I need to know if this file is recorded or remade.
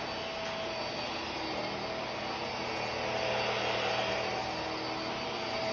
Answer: recorded